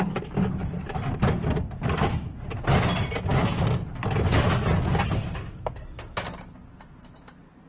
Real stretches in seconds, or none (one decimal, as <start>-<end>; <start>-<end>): 0.0-7.7